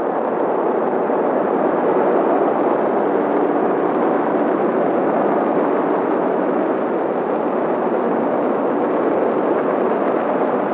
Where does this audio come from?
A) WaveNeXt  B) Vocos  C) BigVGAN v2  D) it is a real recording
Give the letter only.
D